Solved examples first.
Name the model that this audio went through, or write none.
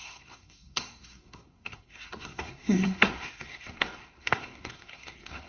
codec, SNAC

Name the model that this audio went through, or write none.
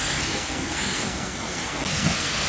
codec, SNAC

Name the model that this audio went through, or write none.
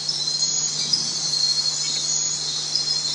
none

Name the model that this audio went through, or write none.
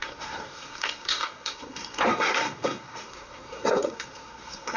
codec, SNAC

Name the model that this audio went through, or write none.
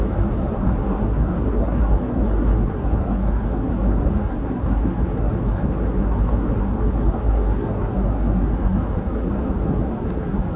codec, SNAC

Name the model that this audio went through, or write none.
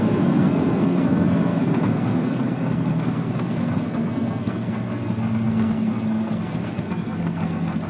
codec, SNAC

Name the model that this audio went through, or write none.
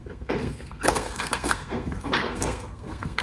codec, SNAC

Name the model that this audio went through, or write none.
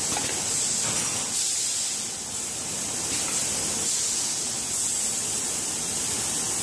none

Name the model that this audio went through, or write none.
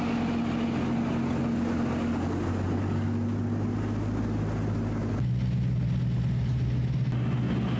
none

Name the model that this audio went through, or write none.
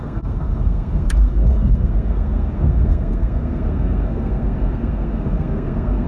codec, SNAC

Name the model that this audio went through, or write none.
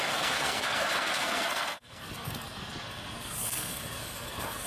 codec, SNAC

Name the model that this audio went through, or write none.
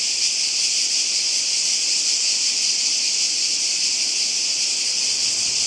none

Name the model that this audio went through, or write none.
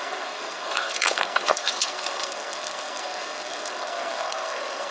codec, SNAC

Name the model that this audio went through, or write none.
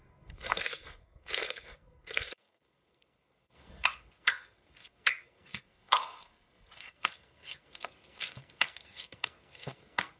codec, SNAC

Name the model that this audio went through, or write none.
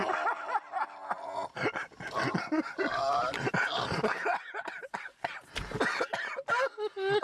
none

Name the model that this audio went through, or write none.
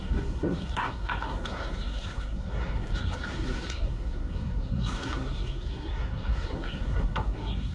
codec, SNAC